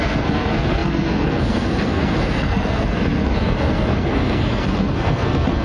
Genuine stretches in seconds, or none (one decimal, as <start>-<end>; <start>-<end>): none